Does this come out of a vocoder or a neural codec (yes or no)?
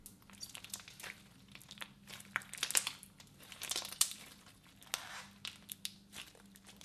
no